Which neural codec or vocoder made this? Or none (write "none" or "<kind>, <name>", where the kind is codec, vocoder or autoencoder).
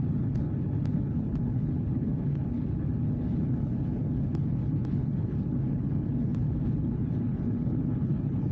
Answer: codec, HILCodec